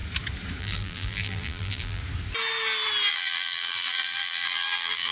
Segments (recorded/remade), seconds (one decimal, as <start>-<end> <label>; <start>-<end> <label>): 0.0-0.6 recorded; 0.6-2.0 remade; 2.0-3.1 recorded; 3.1-5.1 remade